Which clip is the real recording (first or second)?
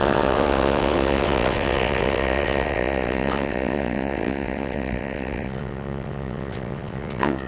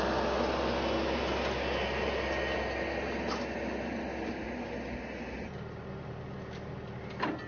second